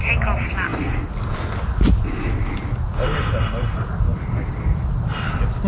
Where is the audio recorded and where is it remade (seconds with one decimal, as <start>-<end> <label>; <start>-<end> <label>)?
0.0-5.7 recorded